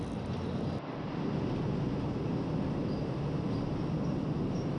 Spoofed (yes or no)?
no